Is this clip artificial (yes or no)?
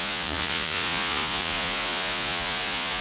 yes